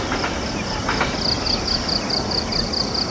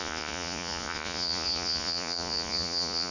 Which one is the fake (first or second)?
second